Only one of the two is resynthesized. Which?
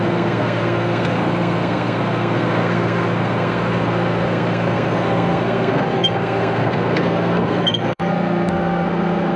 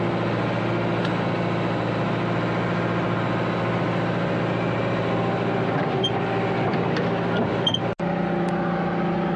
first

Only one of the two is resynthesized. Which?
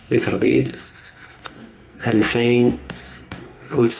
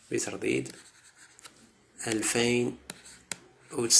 first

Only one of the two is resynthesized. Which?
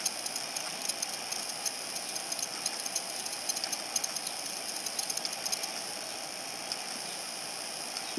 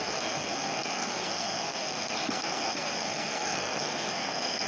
second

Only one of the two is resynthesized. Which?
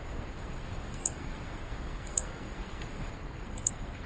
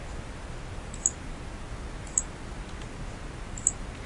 first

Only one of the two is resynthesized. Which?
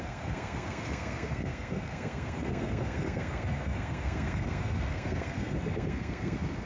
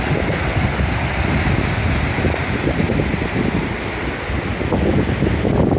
first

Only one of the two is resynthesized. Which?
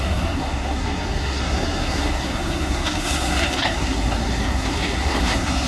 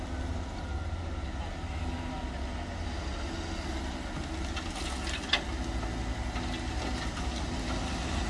first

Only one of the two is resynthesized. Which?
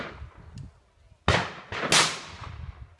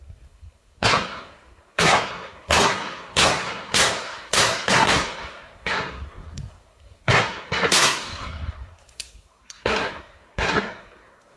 second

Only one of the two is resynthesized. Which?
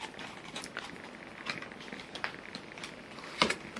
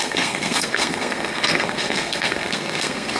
second